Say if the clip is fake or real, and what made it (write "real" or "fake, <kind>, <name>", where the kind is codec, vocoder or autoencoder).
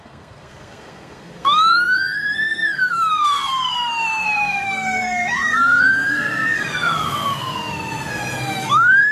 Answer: fake, codec, SNAC